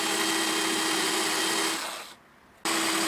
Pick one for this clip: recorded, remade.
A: recorded